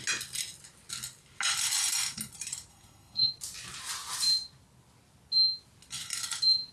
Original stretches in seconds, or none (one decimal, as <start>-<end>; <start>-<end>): 0.0-2.7; 3.3-6.7